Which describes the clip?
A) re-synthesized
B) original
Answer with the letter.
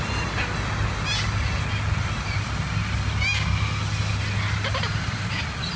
B